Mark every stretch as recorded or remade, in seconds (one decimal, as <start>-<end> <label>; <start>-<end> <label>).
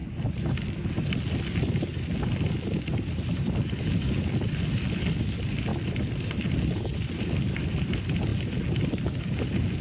0.0-9.8 recorded